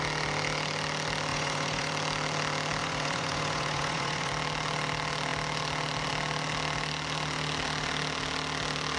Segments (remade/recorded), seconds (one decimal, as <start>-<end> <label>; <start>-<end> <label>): 0.0-1.3 recorded; 1.3-1.9 remade; 1.9-2.8 recorded; 2.8-4.3 remade; 4.3-9.0 recorded